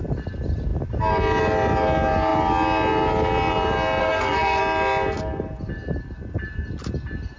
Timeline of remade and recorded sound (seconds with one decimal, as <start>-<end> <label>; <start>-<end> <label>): 0.0-4.0 recorded; 4.0-4.6 remade; 4.6-7.4 recorded